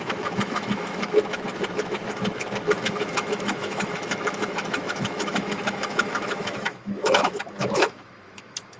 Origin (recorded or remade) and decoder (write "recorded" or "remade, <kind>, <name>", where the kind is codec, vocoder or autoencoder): remade, autoencoder, DAC-VAE